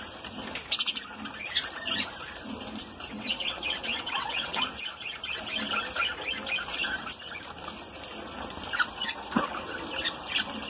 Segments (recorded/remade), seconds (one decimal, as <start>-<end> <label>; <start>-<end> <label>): 0.0-3.1 recorded; 3.1-4.6 remade; 4.6-10.7 recorded